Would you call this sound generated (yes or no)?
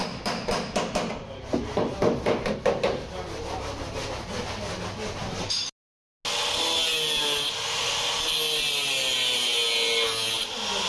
no